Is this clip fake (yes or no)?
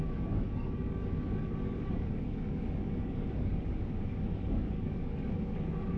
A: yes